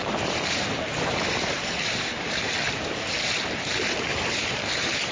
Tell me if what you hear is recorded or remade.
remade